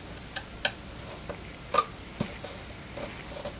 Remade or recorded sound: recorded